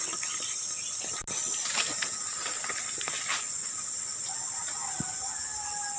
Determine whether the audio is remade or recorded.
recorded